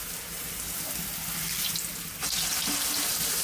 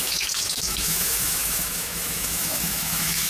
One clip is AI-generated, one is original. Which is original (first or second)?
first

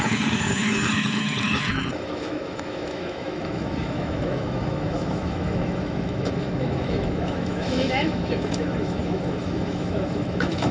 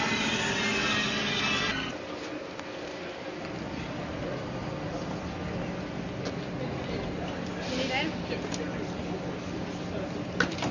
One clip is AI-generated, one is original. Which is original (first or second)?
second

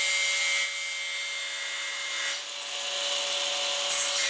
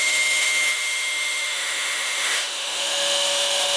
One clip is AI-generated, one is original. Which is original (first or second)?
first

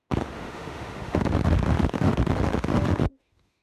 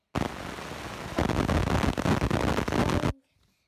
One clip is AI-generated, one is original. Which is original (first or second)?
second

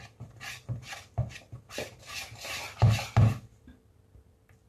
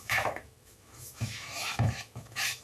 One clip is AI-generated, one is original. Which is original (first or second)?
first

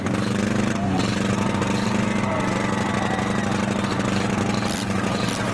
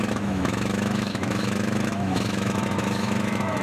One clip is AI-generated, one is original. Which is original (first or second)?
first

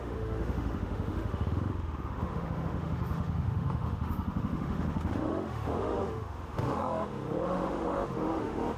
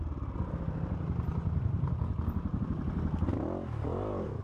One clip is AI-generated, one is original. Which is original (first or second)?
second